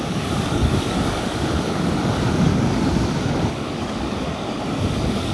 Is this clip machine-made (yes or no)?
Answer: yes